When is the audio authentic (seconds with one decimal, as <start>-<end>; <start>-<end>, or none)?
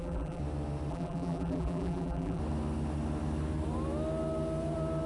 0.4-0.9; 2.4-5.1